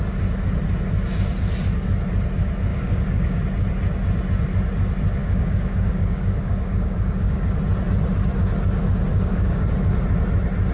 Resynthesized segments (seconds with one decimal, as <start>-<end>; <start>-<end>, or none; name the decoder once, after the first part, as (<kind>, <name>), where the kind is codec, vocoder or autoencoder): 2.7-3.4 (codec, DAC); 5.2-7.6; 9.1-9.7